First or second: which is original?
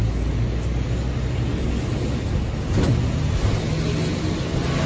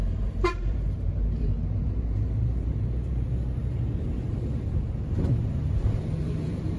first